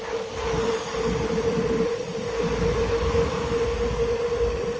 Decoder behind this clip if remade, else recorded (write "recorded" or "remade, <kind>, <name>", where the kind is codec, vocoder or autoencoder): recorded